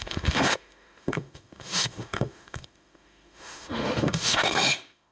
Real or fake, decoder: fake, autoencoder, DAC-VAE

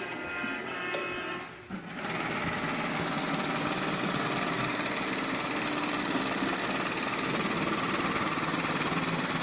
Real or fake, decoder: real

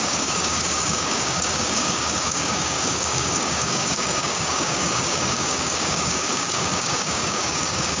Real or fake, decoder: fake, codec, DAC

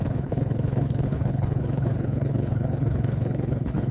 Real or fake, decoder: fake, codec, HILCodec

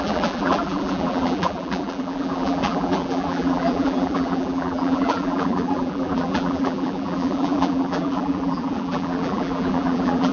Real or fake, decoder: fake, vocoder, BigVGAN v2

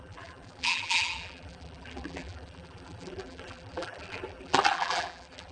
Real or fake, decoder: fake, vocoder, BigVGAN v2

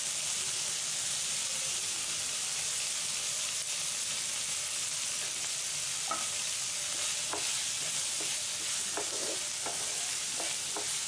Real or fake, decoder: real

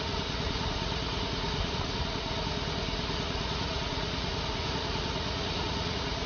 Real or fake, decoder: fake, vocoder, Vocos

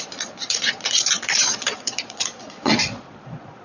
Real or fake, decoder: fake, vocoder, Vocos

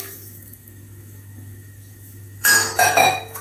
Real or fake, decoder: fake, autoencoder, DAC-VAE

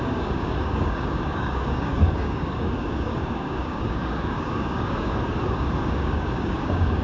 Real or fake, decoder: fake, codec, DAC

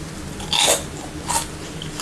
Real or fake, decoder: real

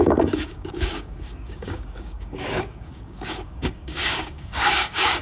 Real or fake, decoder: fake, codec, DAC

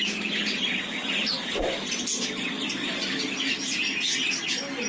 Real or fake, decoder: real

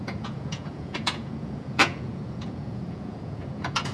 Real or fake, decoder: fake, vocoder, Vocos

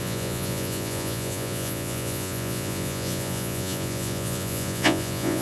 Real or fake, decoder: fake, vocoder, Vocos